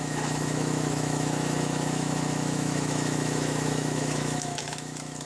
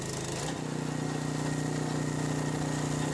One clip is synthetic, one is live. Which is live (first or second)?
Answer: second